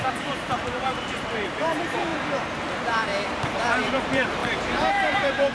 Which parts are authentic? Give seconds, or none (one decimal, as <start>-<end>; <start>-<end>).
3.1-3.8